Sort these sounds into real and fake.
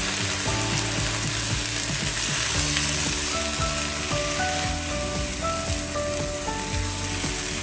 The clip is real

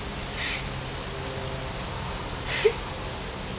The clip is real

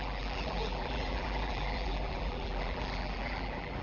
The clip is fake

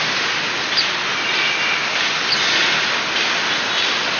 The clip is real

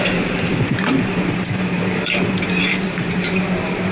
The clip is fake